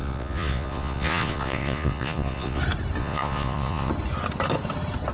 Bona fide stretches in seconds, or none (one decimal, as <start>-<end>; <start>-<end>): 2.6-3.0; 3.9-5.1